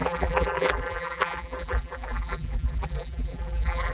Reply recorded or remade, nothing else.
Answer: remade